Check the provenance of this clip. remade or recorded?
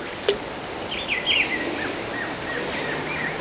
recorded